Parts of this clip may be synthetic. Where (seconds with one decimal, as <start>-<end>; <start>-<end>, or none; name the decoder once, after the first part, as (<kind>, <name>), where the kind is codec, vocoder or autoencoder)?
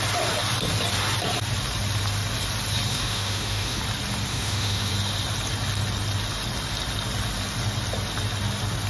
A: 2.9-3.8 (autoencoder, DAC-VAE); 4.3-4.9